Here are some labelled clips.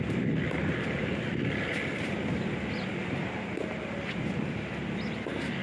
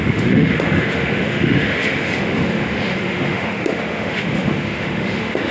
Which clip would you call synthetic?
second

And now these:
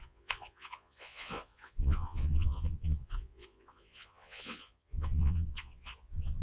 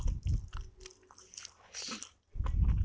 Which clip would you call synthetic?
first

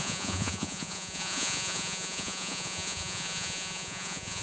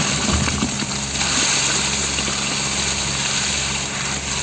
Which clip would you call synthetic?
first